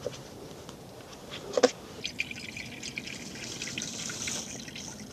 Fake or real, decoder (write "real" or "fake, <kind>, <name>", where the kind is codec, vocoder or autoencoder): real